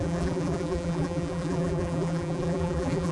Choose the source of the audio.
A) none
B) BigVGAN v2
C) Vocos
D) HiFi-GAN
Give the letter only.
B